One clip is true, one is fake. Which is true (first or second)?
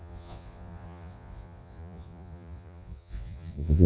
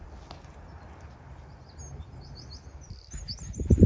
second